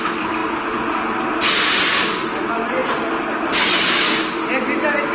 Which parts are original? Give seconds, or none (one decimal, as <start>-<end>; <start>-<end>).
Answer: 0.0-3.7; 4.2-5.1